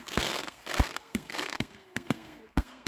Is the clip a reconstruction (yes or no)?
yes